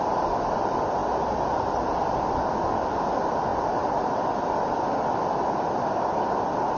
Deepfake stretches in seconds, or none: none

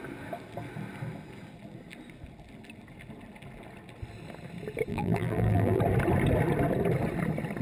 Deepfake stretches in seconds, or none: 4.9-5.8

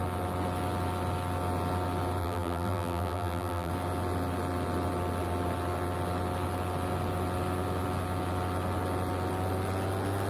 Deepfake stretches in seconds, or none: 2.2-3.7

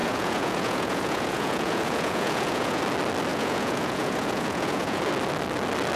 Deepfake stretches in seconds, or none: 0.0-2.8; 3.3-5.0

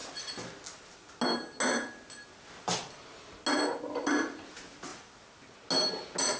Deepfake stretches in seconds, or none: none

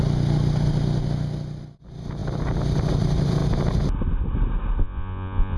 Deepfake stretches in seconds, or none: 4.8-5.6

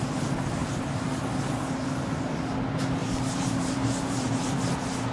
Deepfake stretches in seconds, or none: 3.0-4.6

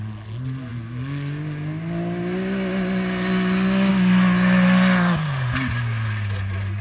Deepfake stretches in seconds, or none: none